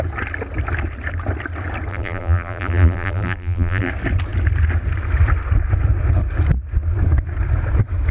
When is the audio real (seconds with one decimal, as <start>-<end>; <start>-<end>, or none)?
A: 0.0-1.9; 3.9-8.1